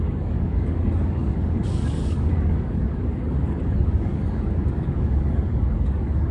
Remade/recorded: remade